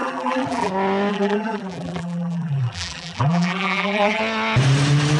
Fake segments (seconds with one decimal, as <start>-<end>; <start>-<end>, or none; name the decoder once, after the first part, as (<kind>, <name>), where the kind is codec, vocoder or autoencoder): 0.0-0.7 (vocoder, BigVGAN v2); 1.1-4.2